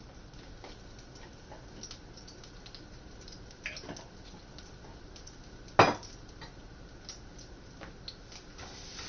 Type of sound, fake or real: real